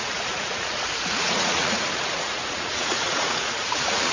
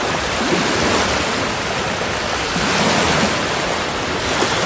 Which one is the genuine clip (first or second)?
second